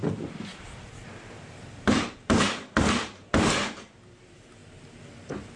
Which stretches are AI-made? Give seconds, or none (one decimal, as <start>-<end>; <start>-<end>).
0.5-3.7